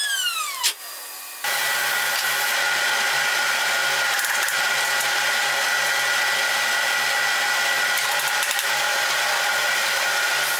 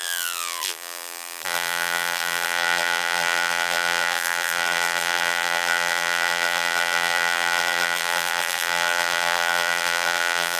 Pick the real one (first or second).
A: first